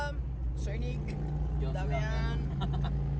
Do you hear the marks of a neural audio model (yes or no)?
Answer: no